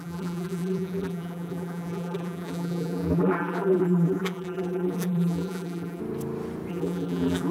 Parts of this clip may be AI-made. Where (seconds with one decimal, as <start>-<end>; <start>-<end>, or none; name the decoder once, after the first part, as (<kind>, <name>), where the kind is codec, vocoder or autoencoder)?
0.0-6.0 (vocoder, BigVGAN v2); 6.7-7.5